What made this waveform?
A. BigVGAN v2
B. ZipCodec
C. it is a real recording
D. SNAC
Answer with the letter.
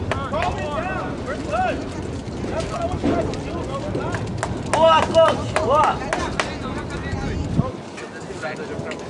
C